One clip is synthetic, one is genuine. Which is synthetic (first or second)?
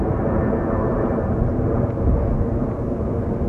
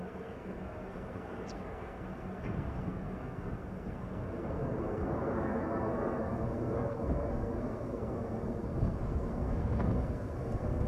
second